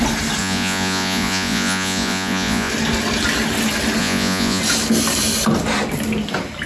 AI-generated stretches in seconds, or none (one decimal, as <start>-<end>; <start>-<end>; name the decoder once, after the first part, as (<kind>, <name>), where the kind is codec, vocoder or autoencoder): 0.4-2.7 (vocoder, Vocos); 4.0-4.6